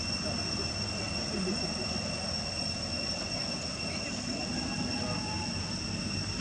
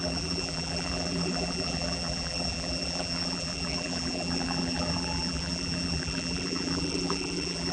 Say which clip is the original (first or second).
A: first